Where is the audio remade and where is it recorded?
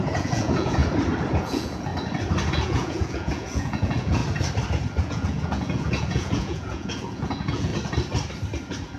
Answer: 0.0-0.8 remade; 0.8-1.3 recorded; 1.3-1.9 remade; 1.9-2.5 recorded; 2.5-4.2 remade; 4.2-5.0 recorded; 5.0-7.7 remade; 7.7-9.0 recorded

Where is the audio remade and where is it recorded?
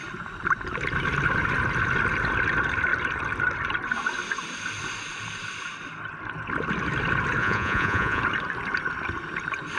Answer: 0.0-7.4 recorded; 7.4-8.2 remade; 8.2-9.8 recorded